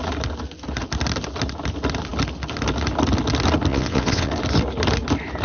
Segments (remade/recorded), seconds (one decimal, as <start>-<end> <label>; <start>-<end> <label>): 0.0-3.7 recorded; 3.7-4.3 remade; 4.3-5.4 recorded